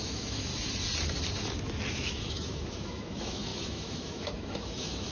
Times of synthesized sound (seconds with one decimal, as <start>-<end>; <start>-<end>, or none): 0.0-0.5; 1.9-5.1